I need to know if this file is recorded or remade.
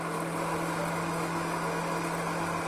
recorded